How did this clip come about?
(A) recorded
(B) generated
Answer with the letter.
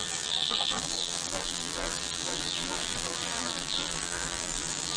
B